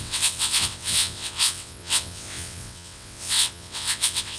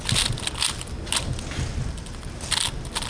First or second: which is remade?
first